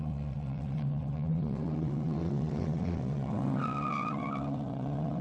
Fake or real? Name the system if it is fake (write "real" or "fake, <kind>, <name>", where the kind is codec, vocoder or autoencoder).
fake, vocoder, WaveNeXt